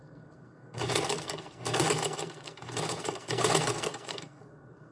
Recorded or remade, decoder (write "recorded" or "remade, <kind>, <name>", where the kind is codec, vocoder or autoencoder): remade, codec, SNAC